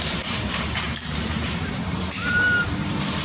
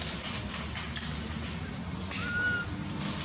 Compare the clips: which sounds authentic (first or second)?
second